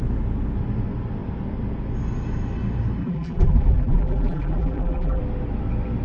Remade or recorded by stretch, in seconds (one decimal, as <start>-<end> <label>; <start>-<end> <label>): 0.0-3.0 recorded; 3.0-5.2 remade; 5.2-6.0 recorded